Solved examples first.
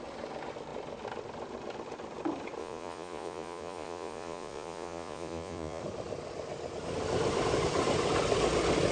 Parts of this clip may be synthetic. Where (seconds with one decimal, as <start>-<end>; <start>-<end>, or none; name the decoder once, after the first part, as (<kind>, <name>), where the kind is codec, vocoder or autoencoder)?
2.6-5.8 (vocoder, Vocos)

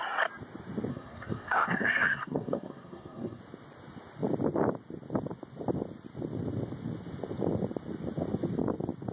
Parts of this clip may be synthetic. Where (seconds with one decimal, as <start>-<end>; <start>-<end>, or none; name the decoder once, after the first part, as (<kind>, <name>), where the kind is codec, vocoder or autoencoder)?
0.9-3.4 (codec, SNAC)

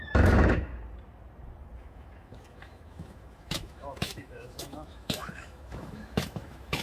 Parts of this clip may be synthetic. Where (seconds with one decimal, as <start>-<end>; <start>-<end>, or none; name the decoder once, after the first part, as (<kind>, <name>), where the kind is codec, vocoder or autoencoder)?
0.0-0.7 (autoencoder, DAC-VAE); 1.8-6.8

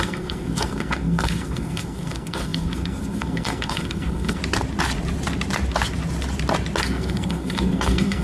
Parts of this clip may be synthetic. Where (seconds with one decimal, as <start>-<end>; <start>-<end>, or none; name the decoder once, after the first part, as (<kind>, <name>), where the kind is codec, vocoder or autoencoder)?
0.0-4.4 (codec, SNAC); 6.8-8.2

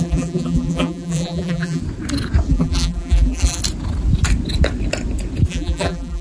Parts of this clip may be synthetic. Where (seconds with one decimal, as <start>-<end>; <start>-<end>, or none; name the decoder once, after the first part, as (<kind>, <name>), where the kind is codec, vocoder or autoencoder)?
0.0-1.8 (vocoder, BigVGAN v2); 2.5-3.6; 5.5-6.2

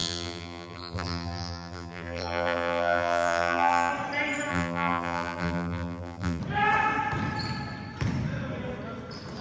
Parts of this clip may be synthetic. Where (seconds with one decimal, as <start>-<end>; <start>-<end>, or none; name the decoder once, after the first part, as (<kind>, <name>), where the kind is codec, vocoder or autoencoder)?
0.0-3.9 (vocoder, BigVGAN v2); 4.5-6.4

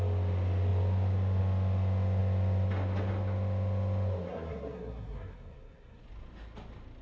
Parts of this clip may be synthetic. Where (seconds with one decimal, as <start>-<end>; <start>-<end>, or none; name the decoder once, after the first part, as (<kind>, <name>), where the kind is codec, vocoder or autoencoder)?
4.3-6.0 (codec, SNAC)

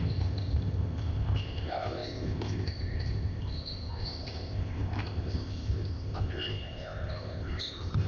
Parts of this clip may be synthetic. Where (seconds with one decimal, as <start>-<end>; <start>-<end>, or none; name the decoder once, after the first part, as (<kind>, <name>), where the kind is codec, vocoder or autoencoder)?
0.0-8.1 (codec, ZipCodec)